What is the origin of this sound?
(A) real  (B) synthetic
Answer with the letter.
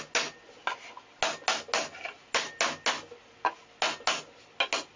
A